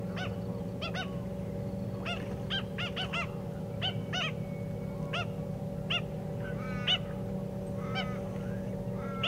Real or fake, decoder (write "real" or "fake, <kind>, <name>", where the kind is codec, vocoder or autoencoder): real